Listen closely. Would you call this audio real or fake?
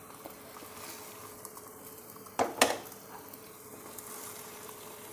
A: real